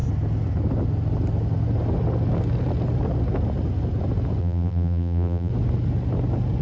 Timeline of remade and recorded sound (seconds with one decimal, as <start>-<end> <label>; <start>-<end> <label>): 0.0-4.4 recorded; 4.4-5.5 remade; 5.5-6.6 recorded